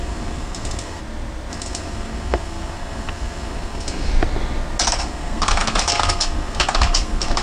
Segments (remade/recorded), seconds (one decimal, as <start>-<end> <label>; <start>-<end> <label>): 0.0-1.0 remade; 1.0-1.5 recorded; 1.5-4.1 remade; 4.1-5.0 recorded; 5.0-7.4 remade